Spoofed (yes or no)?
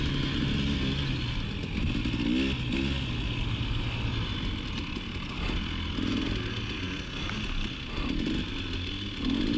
no